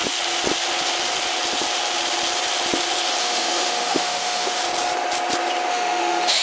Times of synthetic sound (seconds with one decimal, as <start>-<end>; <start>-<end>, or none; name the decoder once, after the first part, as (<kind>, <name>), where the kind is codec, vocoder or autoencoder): 3.2-4.6 (autoencoder, DAC-VAE); 5.7-6.4